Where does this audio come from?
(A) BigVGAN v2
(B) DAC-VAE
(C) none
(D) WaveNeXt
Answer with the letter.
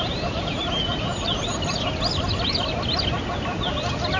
C